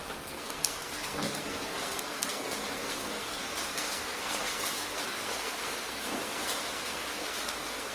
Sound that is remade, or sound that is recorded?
remade